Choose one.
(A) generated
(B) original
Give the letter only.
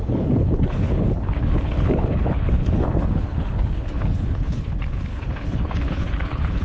A